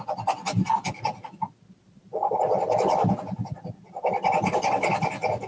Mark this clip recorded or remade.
recorded